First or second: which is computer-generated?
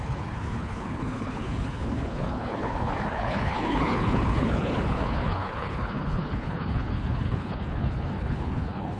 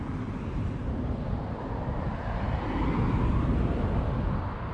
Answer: first